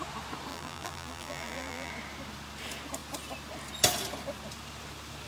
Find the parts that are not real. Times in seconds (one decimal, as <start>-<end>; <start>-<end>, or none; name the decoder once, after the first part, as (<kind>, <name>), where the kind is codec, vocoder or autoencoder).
0.5-1.9 (vocoder, BigVGAN v2)